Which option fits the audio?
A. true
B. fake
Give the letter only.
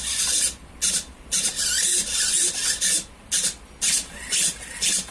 A